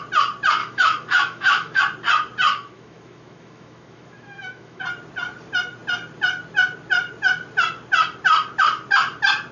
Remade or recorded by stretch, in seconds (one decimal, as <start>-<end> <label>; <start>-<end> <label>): 0.0-0.6 recorded; 0.6-1.8 remade; 1.8-2.5 recorded; 2.5-4.8 remade; 4.8-9.5 recorded